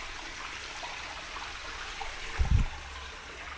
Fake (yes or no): no